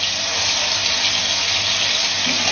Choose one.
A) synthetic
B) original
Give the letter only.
B